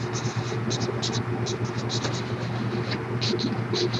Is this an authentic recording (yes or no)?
yes